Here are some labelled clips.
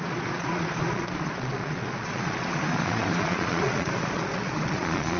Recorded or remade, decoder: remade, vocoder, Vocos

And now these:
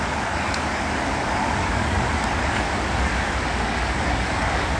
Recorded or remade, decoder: remade, codec, DAC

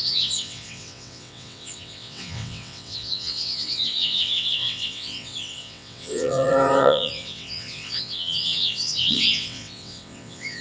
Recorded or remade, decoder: remade, vocoder, WaveNeXt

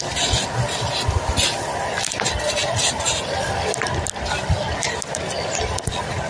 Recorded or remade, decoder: recorded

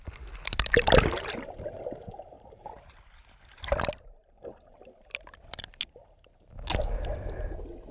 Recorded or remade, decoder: recorded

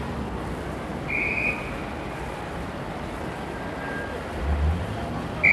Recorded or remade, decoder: recorded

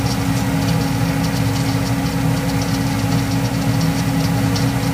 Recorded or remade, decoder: recorded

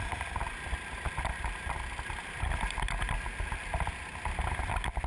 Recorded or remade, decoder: recorded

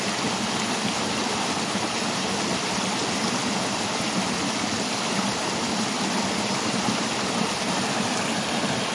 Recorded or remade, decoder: recorded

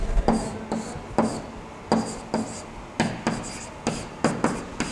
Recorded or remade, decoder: recorded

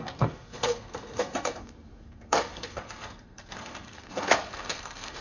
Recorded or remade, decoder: remade, codec, SNAC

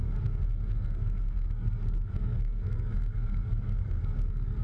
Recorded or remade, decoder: remade, codec, SNAC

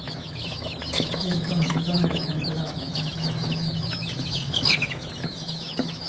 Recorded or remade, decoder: remade, autoencoder, DAC-VAE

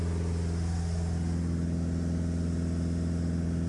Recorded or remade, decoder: recorded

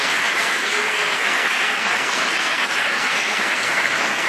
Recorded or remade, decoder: remade, codec, SNAC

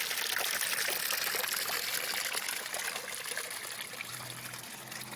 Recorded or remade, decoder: recorded